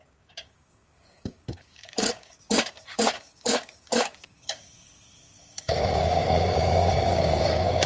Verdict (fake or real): fake